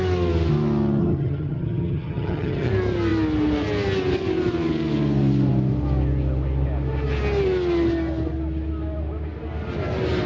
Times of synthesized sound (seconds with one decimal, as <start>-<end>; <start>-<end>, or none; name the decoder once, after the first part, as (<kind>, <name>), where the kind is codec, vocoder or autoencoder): 1.0-2.7 (vocoder, HiFi-GAN)